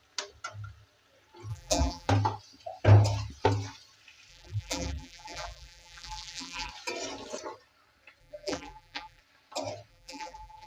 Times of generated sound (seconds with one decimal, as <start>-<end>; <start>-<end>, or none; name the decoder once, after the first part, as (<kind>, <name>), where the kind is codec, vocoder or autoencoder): 1.5-2.1 (vocoder, BigVGAN v2); 4.3-6.7; 8.2-9.2; 9.9-10.7